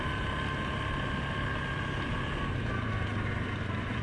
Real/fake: real